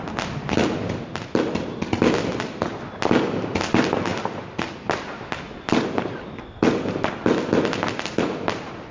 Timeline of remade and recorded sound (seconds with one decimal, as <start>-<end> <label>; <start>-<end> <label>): 0.0-8.9 recorded